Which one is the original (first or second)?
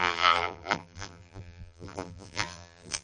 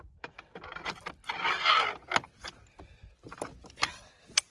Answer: second